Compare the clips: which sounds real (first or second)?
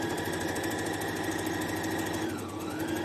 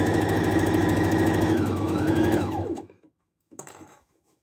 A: first